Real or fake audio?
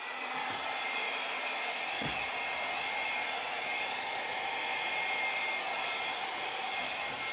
fake